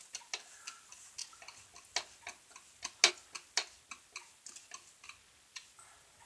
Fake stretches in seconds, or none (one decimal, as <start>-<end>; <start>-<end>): none